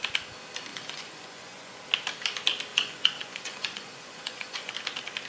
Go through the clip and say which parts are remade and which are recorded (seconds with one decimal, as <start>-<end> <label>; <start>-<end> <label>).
0.0-0.7 recorded; 0.7-1.8 remade; 1.8-2.7 recorded; 2.7-4.7 remade; 4.7-5.3 recorded